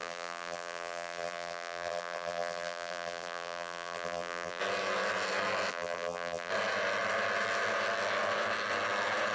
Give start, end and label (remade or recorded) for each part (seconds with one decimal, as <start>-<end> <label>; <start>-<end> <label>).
0.0-4.6 remade; 4.6-5.7 recorded; 5.7-6.5 remade; 6.5-9.3 recorded